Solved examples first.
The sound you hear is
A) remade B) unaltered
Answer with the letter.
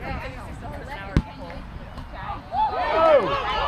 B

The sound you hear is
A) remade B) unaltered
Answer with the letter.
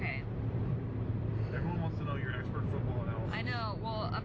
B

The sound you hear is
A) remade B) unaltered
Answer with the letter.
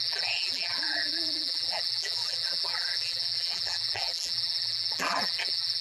A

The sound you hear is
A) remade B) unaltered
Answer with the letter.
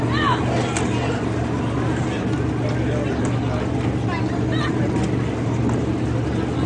B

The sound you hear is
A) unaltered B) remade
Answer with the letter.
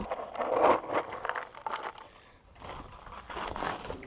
A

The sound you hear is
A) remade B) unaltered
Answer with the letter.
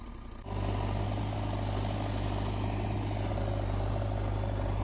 B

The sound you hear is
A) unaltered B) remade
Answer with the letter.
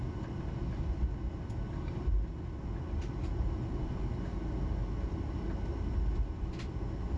A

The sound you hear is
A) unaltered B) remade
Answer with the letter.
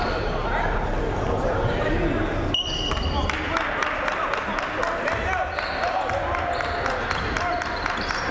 A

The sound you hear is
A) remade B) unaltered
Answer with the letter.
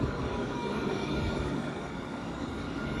A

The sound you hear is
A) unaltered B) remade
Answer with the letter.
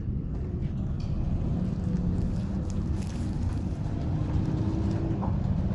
A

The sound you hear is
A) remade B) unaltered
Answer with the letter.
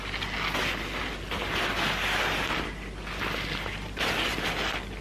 B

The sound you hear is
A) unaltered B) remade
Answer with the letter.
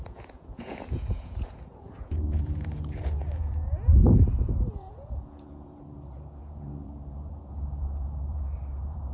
B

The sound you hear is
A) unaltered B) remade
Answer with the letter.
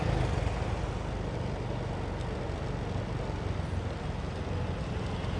A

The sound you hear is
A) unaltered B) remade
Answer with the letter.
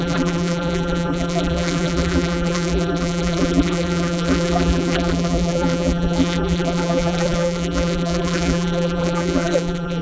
B